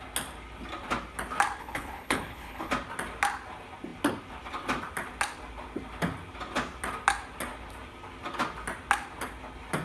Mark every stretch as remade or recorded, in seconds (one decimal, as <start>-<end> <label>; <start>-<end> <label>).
0.0-1.6 recorded; 1.6-2.7 remade; 2.7-9.8 recorded